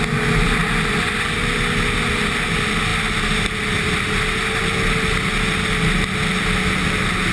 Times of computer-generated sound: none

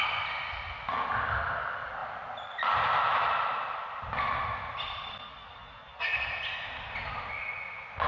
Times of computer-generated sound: none

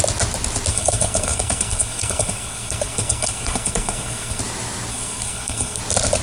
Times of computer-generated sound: 0.7-4.4 (codec, SNAC); 4.9-5.8

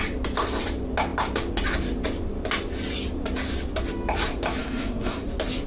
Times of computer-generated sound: 4.6-5.2 (codec, SNAC)

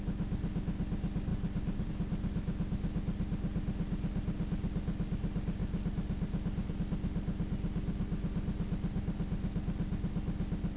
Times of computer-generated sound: 1.3-1.9 (vocoder, BigVGAN v2)

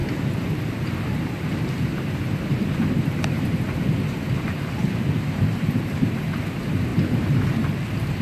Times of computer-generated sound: 0.0-8.2 (vocoder, BigVGAN v2)